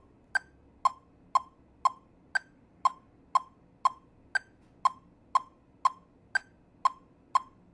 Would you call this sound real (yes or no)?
yes